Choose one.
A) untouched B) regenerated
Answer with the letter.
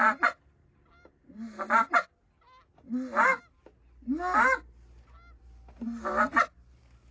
A